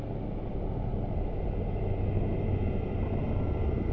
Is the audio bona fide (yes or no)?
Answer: yes